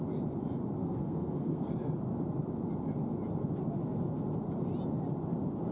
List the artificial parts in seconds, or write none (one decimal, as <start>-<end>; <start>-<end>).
0.8-1.7